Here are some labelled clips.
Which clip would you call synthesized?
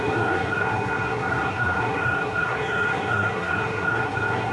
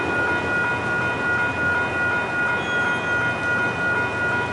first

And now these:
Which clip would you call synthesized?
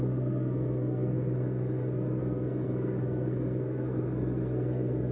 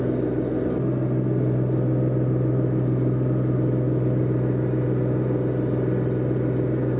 first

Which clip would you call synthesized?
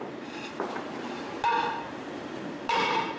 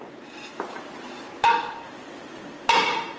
first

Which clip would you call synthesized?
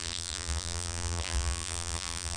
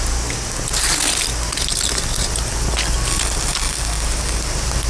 first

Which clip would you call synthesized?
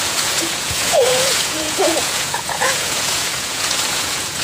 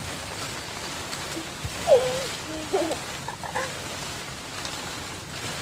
first